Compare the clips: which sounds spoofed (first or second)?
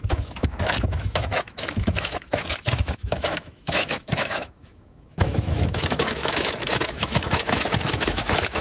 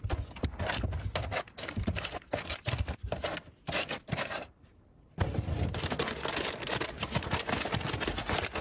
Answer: first